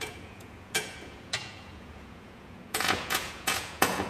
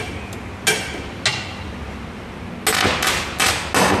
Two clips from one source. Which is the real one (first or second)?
second